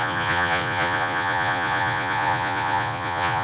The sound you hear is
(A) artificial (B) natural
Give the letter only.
A